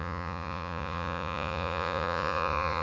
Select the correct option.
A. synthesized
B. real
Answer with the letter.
A